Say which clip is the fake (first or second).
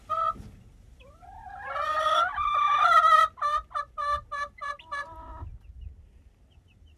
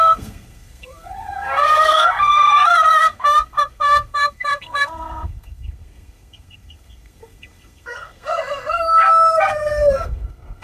second